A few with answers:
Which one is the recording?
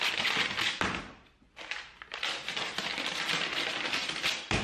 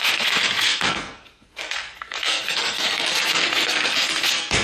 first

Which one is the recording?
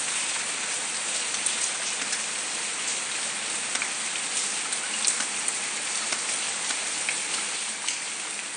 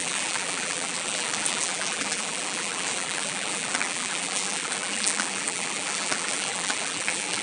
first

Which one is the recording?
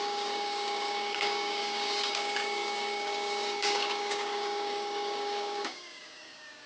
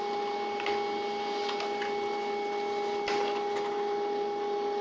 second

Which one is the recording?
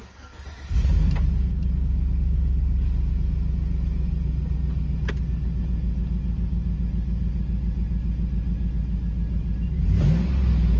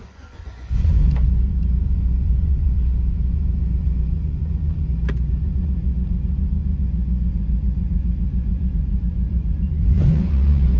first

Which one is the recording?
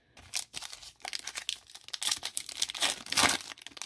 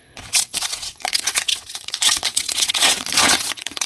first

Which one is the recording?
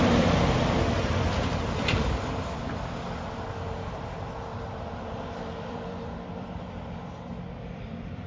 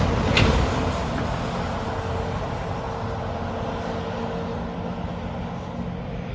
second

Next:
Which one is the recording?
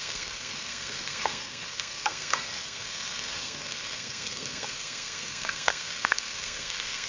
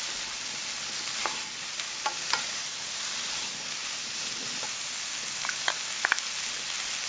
second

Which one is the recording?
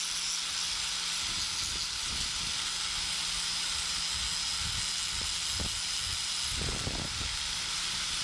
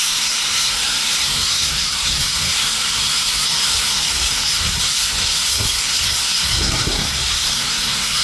first